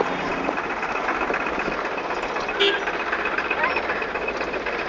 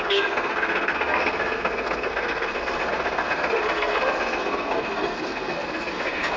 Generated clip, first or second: second